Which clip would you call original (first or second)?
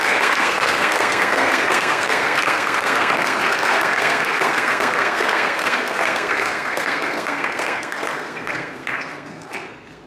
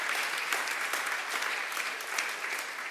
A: second